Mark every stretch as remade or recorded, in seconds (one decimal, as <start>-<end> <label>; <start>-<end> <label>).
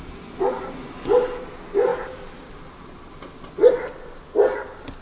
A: 0.0-5.0 recorded